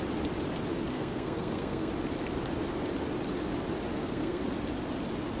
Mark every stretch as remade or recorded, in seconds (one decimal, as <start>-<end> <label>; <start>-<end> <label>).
0.0-0.9 recorded; 0.9-1.9 remade; 1.9-3.9 recorded; 3.9-4.4 remade; 4.4-5.4 recorded